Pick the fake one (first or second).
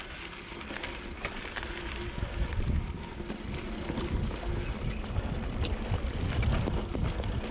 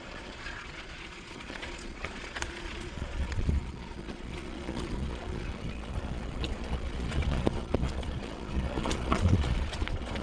second